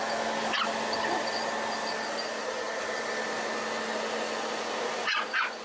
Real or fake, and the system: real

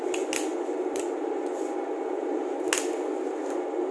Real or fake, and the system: real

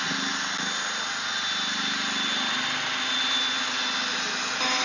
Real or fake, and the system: real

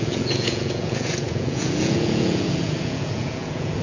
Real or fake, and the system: fake, vocoder, Vocos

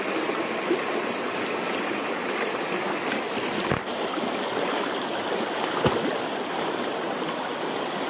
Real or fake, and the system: real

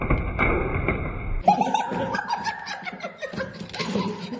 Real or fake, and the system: real